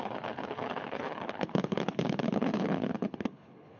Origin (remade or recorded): remade